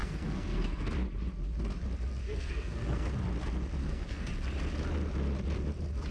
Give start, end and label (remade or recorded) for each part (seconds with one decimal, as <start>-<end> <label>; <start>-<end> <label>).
0.0-0.9 remade; 0.9-2.2 recorded; 2.2-3.1 remade; 3.1-3.8 recorded; 3.8-4.3 remade; 4.3-6.1 recorded